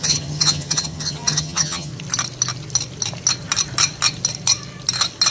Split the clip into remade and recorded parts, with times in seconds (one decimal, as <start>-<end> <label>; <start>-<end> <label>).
0.0-1.9 remade; 1.9-5.3 recorded